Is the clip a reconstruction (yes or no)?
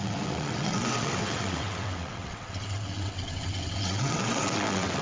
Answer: yes